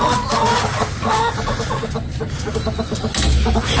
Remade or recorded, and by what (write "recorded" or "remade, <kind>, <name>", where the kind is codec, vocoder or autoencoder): recorded